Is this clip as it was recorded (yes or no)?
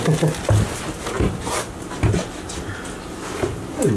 yes